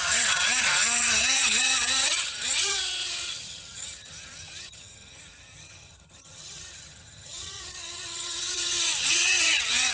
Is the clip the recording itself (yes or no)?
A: no